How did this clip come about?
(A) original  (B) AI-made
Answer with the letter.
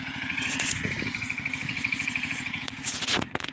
B